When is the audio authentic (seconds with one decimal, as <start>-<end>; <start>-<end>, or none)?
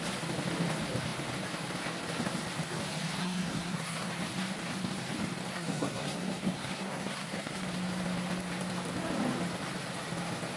0.0-3.2; 4.1-5.5; 7.6-10.6